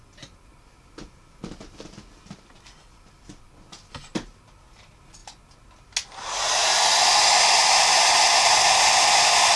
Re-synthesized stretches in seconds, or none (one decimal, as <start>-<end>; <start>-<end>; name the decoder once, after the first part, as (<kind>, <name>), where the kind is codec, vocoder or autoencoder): none